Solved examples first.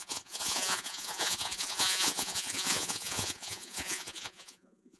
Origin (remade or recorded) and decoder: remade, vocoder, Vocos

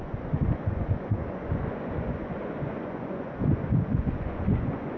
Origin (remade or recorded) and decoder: remade, vocoder, Vocos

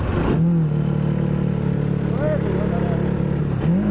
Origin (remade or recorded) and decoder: recorded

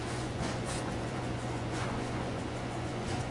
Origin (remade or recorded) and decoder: remade, vocoder, Vocos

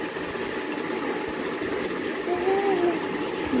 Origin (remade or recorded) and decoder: recorded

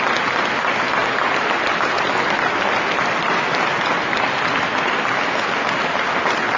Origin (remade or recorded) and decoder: recorded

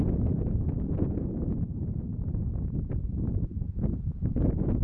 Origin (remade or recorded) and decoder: remade, vocoder, Vocos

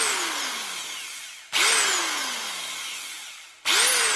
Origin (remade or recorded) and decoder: recorded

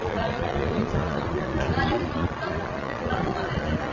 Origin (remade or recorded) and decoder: remade, vocoder, Vocos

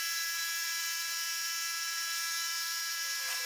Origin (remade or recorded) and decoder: recorded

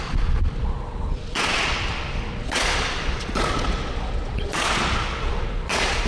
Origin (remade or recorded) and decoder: remade, vocoder, Vocos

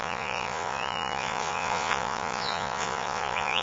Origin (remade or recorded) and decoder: remade, vocoder, Vocos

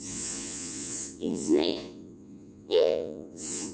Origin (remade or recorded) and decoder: remade, vocoder, Vocos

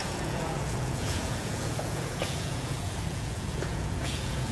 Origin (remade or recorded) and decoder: remade, vocoder, Vocos